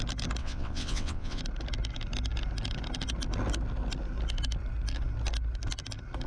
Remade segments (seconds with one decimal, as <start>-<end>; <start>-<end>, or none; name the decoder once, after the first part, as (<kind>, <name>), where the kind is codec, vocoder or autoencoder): 0.4-1.4 (vocoder, WaveNeXt)